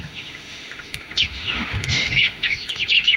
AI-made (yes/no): yes